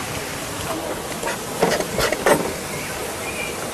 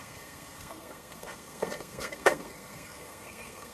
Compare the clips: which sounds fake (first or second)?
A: second